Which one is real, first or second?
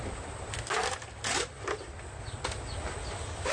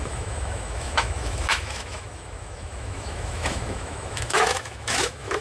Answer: first